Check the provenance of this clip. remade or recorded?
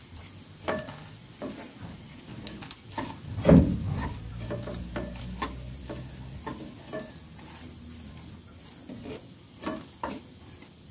recorded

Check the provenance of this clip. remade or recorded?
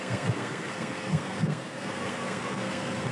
remade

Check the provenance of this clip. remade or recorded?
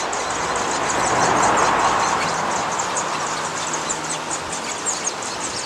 recorded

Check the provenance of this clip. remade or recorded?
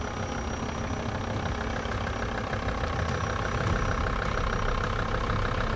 recorded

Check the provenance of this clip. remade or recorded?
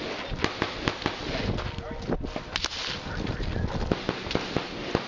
recorded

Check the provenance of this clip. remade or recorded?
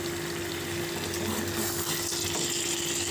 recorded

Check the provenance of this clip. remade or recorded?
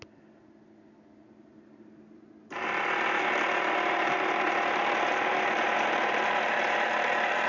recorded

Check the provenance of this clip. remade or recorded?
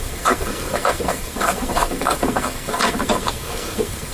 remade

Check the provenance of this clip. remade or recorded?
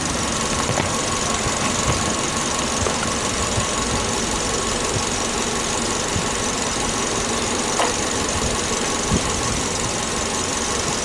recorded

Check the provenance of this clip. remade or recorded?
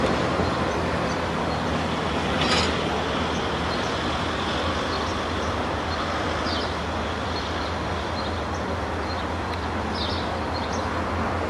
recorded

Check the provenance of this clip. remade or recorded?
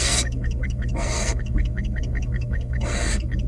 remade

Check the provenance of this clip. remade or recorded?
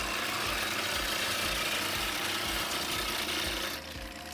recorded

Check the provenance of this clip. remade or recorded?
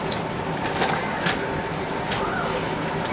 recorded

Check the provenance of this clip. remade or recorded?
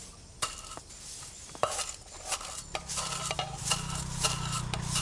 recorded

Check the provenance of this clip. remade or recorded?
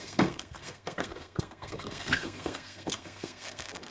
remade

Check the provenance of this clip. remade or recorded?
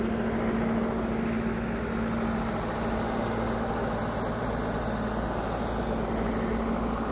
recorded